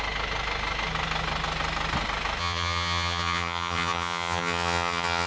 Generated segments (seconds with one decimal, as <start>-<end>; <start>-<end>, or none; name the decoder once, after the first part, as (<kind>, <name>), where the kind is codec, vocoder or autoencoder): 2.4-5.3 (vocoder, HiFi-GAN)